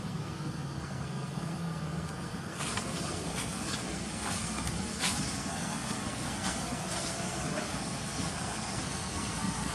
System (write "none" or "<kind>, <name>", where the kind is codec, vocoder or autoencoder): codec, SNAC